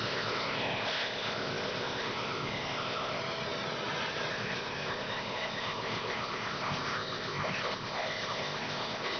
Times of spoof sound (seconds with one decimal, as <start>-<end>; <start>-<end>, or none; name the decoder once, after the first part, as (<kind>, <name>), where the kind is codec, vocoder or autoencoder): 0.0-3.2 (codec, ZipCodec); 4.3-9.2